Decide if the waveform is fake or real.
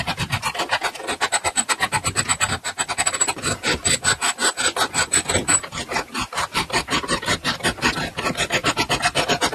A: real